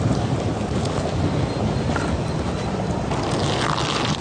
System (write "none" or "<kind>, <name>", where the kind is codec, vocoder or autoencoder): none